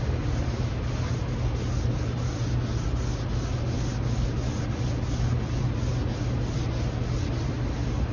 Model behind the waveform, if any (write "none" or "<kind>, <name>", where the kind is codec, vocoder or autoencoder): none